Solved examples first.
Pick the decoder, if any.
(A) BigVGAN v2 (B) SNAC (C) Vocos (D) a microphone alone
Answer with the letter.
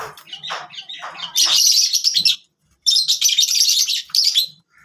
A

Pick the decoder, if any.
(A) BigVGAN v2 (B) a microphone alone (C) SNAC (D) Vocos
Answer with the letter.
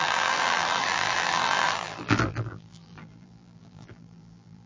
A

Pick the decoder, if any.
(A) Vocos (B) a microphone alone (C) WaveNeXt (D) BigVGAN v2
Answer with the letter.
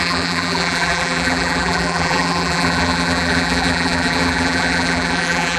D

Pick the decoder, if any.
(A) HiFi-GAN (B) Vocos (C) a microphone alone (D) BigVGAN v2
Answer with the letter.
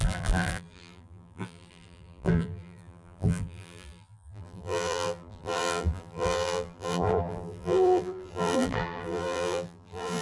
D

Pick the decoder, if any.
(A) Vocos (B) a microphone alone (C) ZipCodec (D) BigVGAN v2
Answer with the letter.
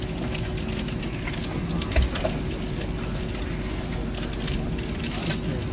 B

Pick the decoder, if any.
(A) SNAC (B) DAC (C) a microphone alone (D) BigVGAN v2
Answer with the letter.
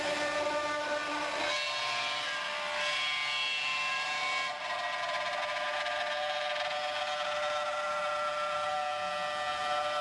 C